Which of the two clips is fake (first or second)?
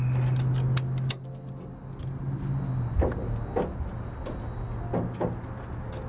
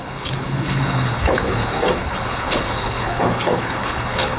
second